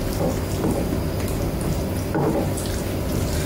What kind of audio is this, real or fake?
fake